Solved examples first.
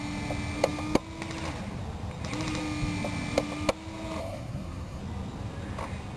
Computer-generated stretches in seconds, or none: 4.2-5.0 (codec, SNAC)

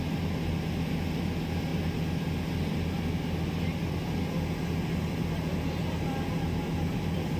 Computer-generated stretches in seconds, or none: none